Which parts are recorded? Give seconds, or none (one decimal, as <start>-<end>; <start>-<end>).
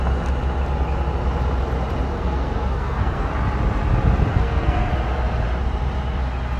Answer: 0.0-2.1; 3.3-4.3; 4.9-6.6